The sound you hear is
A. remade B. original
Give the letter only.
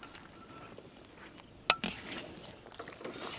B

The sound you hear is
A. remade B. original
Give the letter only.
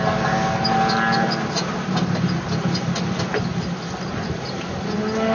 B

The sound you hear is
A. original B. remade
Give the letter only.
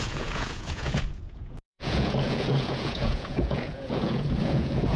B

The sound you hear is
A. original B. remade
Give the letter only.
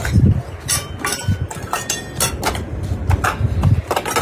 A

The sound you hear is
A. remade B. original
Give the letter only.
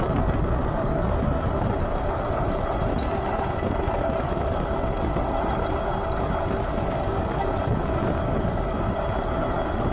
B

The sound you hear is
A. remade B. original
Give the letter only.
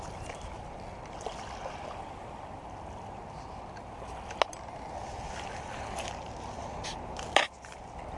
B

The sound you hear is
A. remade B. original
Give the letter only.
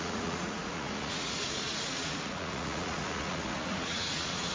A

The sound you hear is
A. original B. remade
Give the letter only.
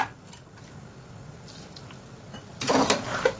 A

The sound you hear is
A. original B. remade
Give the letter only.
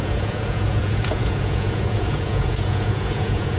B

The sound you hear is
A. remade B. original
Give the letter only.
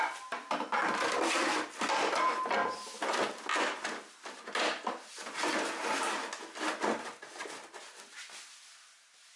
B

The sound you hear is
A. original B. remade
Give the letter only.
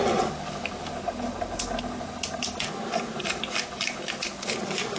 A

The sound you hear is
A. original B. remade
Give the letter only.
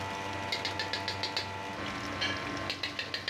A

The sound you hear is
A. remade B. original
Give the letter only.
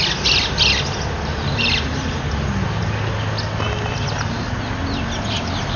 B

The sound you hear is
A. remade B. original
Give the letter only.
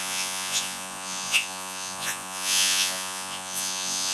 A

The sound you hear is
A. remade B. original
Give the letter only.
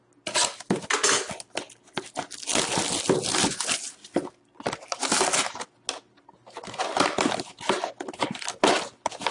B